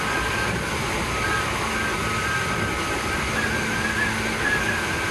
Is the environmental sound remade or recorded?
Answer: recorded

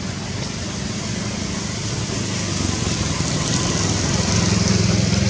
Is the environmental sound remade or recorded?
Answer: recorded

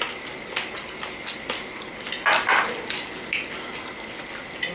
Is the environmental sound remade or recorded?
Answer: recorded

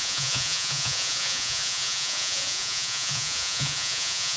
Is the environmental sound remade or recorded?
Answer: remade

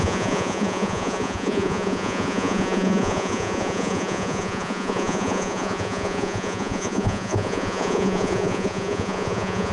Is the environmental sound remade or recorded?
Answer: remade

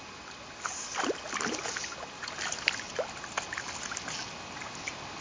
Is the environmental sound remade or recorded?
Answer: recorded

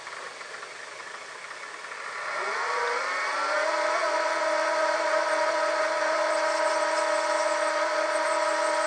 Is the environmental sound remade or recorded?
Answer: recorded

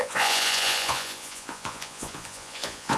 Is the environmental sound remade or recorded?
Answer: remade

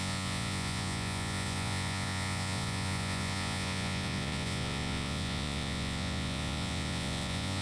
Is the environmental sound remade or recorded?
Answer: remade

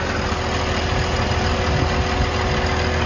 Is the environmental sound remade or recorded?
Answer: recorded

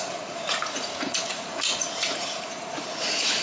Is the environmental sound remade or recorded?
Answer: remade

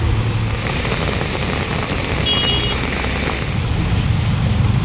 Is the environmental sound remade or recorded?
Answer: recorded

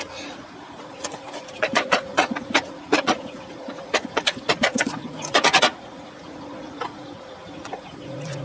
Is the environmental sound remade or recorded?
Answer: remade